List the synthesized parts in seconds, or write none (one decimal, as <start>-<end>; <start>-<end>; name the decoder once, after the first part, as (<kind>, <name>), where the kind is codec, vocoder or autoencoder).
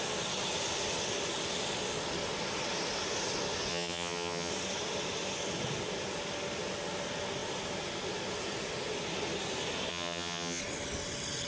3.7-4.5 (vocoder, HiFi-GAN); 9.9-10.6